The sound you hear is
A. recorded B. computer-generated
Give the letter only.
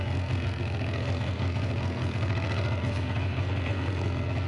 B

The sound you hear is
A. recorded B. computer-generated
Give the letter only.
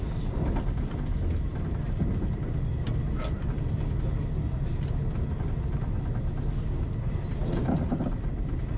A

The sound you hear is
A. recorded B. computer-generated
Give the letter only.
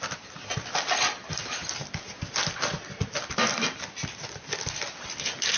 A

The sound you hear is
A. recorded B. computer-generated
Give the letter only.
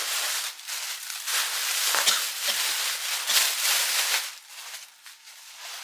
A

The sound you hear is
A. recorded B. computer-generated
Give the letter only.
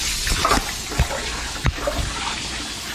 A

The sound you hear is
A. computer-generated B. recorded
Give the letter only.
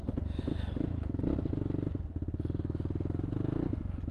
B